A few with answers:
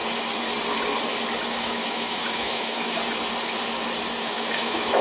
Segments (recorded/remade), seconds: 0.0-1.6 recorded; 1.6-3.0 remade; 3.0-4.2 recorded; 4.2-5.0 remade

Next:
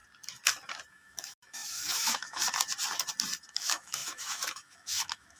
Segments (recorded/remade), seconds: 0.0-0.9 recorded; 0.9-2.4 remade; 2.4-3.5 recorded; 3.5-5.4 remade

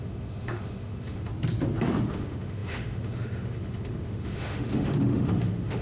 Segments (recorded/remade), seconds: 0.0-1.3 remade; 1.3-2.1 recorded; 2.1-5.8 remade

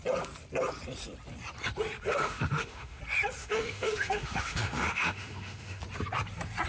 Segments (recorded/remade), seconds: 0.0-2.1 recorded; 2.1-3.0 remade; 3.0-3.4 recorded; 3.4-5.8 remade; 5.8-6.7 recorded

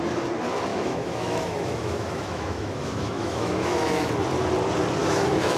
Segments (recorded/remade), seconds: 0.0-0.7 recorded; 0.7-4.1 remade; 4.1-5.0 recorded; 5.0-5.6 remade

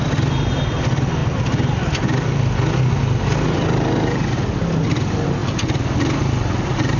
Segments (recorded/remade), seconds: 0.0-7.0 recorded